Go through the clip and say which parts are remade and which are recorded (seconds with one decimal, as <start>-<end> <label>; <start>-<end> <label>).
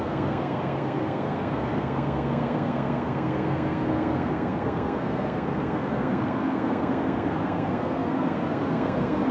0.0-9.3 remade